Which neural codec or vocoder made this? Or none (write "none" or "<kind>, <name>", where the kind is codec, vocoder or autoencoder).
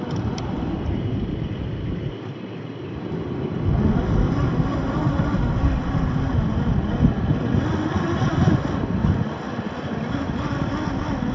none